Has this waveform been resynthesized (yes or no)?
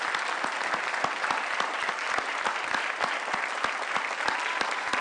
no